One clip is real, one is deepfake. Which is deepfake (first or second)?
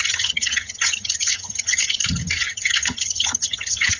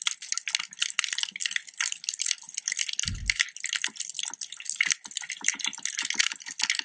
first